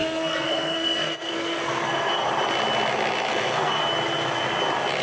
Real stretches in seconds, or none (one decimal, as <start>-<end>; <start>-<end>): 2.3-3.3; 3.8-5.0